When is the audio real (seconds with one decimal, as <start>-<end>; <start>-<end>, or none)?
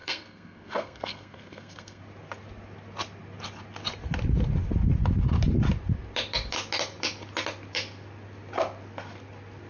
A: 2.0-9.7